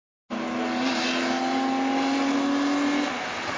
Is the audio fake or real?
real